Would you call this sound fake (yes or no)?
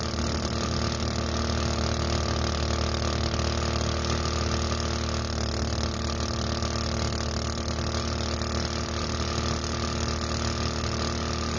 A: no